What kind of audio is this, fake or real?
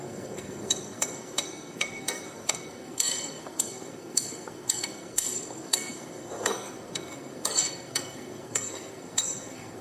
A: fake